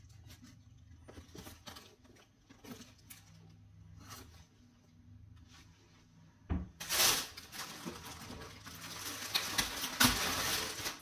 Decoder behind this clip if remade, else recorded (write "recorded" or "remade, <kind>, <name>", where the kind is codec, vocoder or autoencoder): recorded